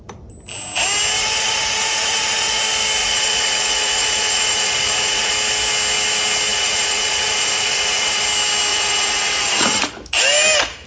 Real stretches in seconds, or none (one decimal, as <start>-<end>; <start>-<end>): 0.0-1.2; 2.6-3.0; 5.3-6.5; 8.2-8.7; 9.9-10.9